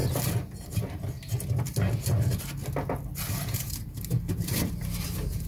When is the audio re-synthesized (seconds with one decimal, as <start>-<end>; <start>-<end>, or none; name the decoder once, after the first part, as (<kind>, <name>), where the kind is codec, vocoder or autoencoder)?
3.3-5.5 (vocoder, BigVGAN v2)